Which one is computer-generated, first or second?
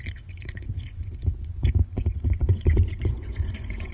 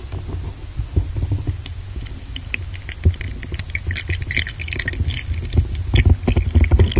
first